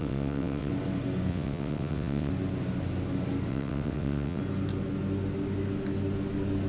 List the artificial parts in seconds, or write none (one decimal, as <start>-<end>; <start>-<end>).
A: 0.0-0.7; 1.3-2.3; 3.5-4.4